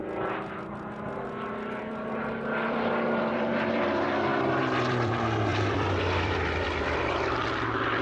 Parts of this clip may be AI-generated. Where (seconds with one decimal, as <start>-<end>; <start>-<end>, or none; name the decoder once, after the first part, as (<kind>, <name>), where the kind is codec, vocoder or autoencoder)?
1.8-8.0 (vocoder, BigVGAN v2)